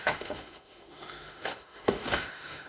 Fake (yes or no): yes